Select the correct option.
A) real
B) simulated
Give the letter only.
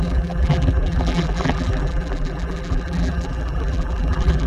B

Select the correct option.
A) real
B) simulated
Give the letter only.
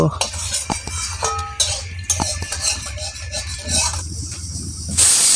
A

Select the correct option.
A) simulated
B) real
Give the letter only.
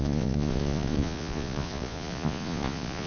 A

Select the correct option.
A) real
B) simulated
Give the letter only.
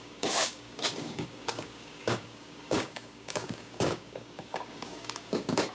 B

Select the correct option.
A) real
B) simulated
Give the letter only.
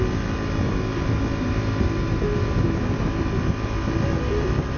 A